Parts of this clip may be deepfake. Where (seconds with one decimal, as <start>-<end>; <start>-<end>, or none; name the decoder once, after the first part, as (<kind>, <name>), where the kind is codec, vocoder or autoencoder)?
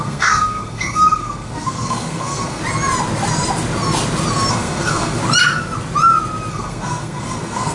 0.0-2.6 (codec, SNAC); 4.5-5.2; 6.5-7.7